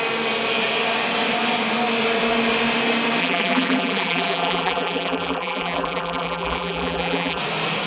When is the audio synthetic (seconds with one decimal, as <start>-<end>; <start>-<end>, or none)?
3.2-7.4